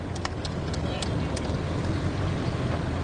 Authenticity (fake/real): real